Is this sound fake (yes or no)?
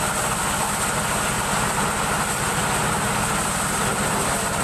no